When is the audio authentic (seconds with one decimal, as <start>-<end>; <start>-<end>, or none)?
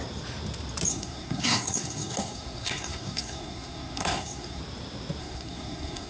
0.0-0.9; 4.6-5.2